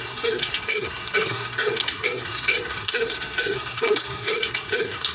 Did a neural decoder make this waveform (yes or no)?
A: yes